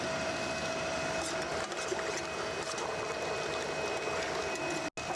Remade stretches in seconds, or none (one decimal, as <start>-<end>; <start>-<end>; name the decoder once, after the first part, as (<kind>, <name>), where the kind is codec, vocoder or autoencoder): none